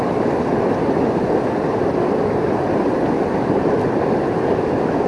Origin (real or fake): real